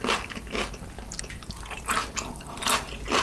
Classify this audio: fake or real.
real